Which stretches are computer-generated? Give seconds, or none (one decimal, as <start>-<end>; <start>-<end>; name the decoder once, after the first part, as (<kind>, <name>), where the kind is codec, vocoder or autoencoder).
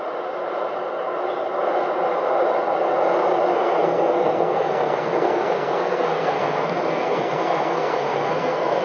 3.5-8.8 (codec, SNAC)